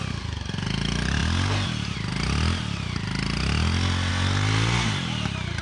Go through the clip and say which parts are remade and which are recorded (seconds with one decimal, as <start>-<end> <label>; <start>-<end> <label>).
0.0-5.6 recorded